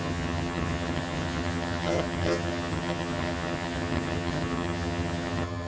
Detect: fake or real fake